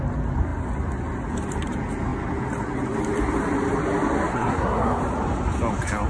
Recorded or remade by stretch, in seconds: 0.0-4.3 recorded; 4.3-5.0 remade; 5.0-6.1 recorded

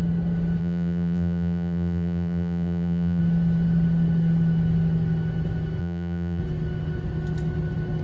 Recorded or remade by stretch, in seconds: 0.0-0.6 recorded; 0.6-3.2 remade; 3.2-5.8 recorded; 5.8-6.4 remade; 6.4-8.0 recorded

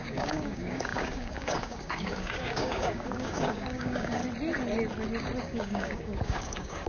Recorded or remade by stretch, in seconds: 0.0-4.2 remade; 4.2-5.4 recorded; 5.4-6.9 remade

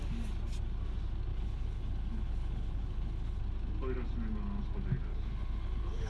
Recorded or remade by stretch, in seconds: 0.0-1.3 recorded; 1.3-3.4 remade; 3.4-5.1 recorded; 5.1-6.1 remade

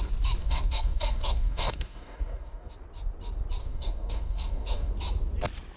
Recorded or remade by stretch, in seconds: 0.0-0.4 recorded; 0.4-2.7 remade; 2.7-3.6 recorded; 3.6-4.9 remade; 4.9-5.8 recorded

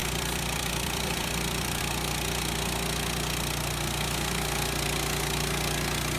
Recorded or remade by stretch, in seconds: 0.0-1.8 remade; 1.8-6.2 recorded

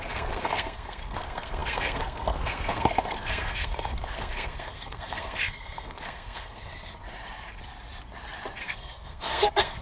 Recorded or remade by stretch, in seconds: 0.0-6.7 remade; 6.7-8.6 recorded; 8.6-9.8 remade

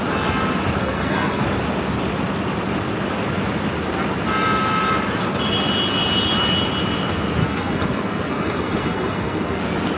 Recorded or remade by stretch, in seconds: 0.0-0.8 recorded; 0.8-1.4 remade; 1.4-7.4 recorded; 7.4-9.6 remade; 9.6-10.0 recorded